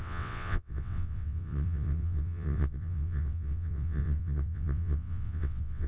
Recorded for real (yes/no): no